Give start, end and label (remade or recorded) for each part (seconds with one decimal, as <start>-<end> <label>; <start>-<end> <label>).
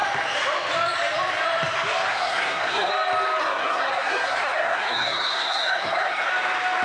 0.0-2.1 recorded; 2.1-2.9 remade; 2.9-3.4 recorded; 3.4-6.3 remade; 6.3-6.8 recorded